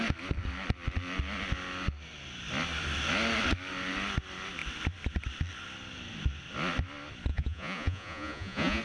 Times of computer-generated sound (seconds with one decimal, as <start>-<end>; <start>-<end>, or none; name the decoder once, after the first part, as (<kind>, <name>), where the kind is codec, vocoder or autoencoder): 7.3-8.8 (vocoder, Vocos)